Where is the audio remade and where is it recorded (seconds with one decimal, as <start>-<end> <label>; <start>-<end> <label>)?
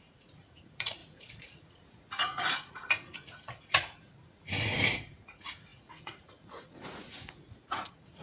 0.0-8.2 remade